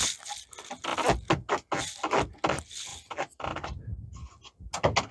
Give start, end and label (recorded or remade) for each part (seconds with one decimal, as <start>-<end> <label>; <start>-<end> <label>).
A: 0.0-5.1 recorded